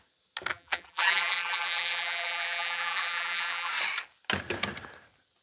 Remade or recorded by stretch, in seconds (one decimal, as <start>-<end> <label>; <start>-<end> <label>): 0.0-0.5 recorded; 0.5-3.7 remade; 3.7-5.4 recorded